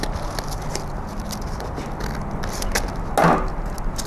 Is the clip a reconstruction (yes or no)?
no